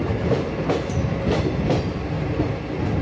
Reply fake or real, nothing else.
real